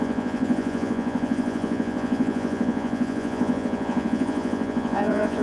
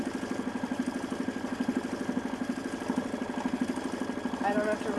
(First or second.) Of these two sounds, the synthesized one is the first